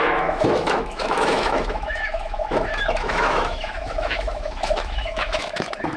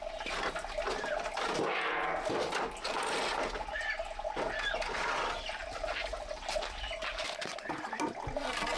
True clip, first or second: second